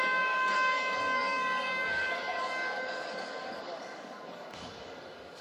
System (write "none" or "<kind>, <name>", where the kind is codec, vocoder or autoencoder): codec, DAC